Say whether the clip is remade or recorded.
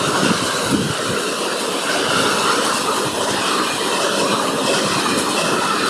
recorded